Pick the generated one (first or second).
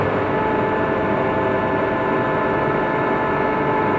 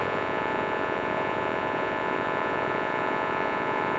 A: second